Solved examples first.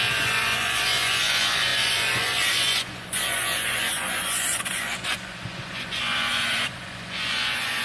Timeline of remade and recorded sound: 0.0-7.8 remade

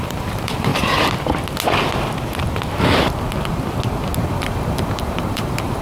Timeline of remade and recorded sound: 0.0-0.7 remade; 0.7-4.2 recorded; 4.2-5.8 remade

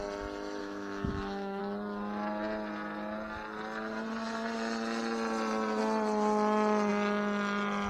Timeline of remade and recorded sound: 0.0-0.6 recorded; 0.6-1.6 remade; 1.6-7.9 recorded

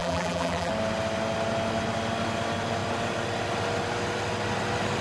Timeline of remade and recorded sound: 0.0-0.7 remade; 0.7-5.0 recorded

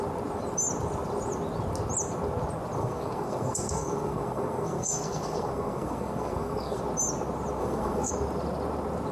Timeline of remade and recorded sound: 0.0-2.8 recorded; 2.8-6.8 remade; 6.8-7.6 recorded; 7.6-8.1 remade; 8.1-9.1 recorded